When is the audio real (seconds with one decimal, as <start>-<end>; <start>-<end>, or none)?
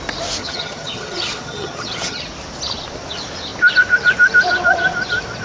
0.0-0.4; 2.2-5.4